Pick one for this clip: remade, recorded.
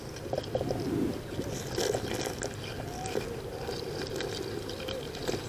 recorded